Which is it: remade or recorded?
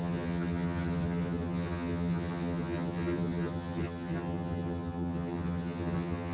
remade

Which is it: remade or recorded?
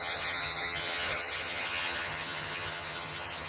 remade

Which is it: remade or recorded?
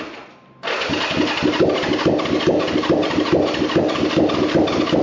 recorded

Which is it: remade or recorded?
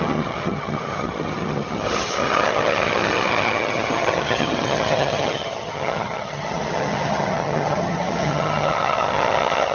remade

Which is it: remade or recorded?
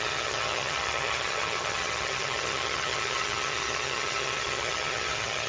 remade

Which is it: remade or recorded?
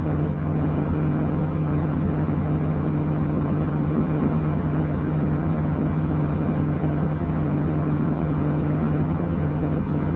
remade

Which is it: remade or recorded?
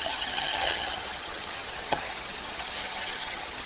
remade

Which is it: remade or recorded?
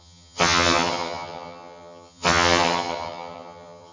remade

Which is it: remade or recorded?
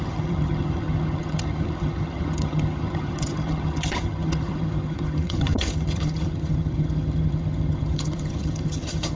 remade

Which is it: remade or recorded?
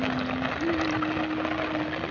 recorded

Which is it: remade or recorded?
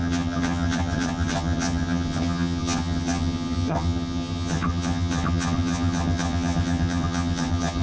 remade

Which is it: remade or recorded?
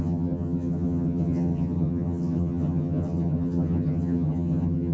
remade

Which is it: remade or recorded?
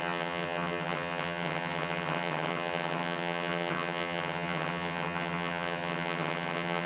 remade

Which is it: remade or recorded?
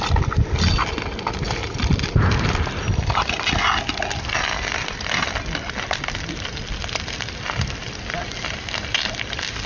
recorded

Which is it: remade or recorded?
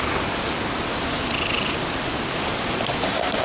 recorded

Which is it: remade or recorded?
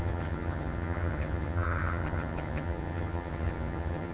remade